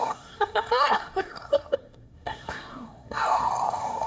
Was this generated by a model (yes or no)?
yes